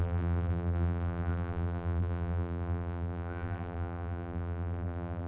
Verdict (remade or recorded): remade